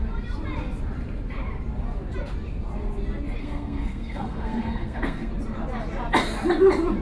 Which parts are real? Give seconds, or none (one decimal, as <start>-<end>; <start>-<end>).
0.0-3.4; 5.3-7.0